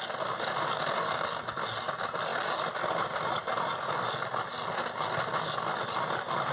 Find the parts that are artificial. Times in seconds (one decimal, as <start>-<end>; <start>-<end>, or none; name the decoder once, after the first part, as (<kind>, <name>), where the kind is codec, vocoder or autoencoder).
none